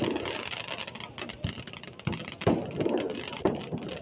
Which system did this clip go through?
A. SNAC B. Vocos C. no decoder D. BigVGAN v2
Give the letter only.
C